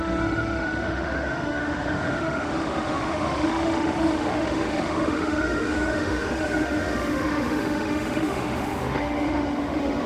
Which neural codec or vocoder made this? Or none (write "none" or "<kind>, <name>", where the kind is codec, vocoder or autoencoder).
autoencoder, DAC-VAE